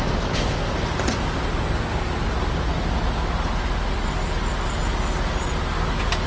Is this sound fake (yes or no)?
no